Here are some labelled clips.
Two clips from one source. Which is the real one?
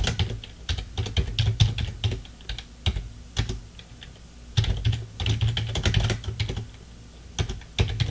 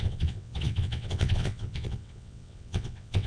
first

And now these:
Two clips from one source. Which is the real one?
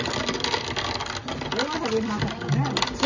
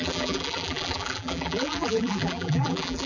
first